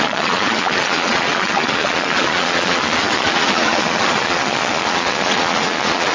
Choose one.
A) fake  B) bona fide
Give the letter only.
A